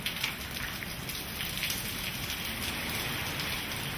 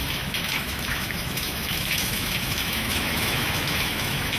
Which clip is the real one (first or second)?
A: first